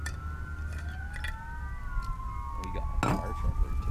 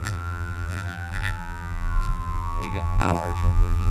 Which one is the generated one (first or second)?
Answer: second